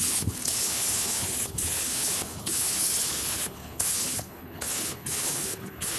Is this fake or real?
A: fake